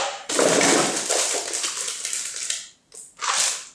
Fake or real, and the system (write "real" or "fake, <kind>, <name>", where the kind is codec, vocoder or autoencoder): real